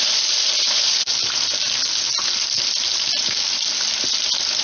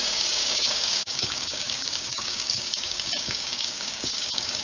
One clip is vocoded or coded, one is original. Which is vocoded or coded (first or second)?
second